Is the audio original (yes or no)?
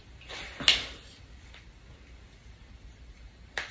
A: yes